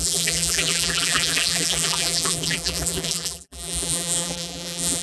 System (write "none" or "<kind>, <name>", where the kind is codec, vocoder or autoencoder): vocoder, BigVGAN v2